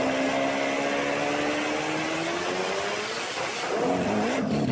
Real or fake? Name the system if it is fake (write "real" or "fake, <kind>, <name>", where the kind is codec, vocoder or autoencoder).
real